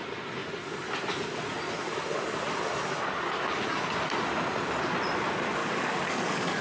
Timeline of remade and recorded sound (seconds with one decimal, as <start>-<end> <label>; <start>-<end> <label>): 0.0-5.6 recorded; 5.6-6.6 remade